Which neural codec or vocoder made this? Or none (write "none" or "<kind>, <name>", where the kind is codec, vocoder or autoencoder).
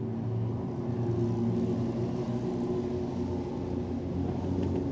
none